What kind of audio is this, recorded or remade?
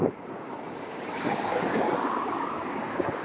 remade